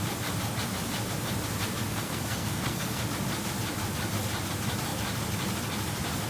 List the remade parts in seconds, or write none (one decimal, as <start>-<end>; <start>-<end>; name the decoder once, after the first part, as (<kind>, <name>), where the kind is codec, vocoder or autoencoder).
1.9-3.0 (codec, SNAC)